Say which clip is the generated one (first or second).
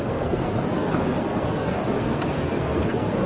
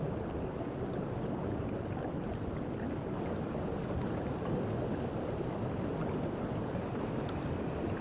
first